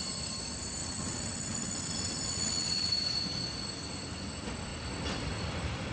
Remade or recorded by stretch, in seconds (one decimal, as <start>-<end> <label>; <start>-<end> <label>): 0.0-0.8 recorded; 0.8-2.9 remade; 2.9-5.9 recorded